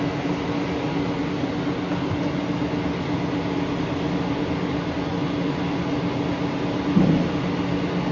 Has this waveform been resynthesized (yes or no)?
no